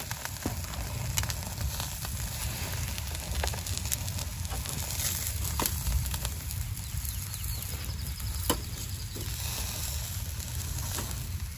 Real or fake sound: real